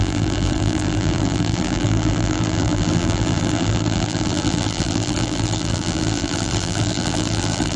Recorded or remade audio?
remade